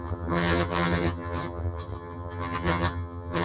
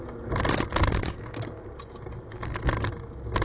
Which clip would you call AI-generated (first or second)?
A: first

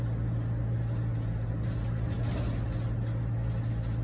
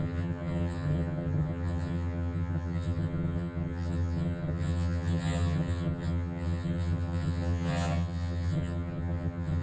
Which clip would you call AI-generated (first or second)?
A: second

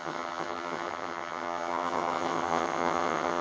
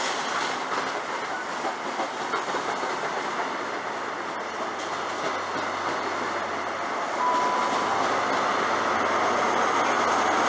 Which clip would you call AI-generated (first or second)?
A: first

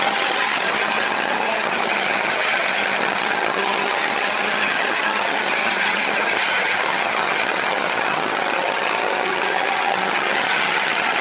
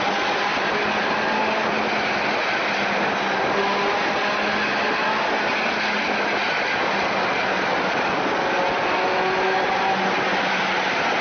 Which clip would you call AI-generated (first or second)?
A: first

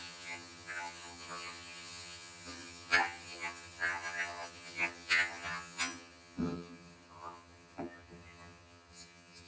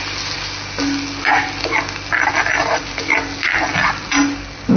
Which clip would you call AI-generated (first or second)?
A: first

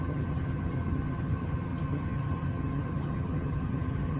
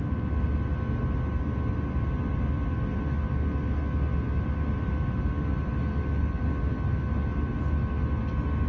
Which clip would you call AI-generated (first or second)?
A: first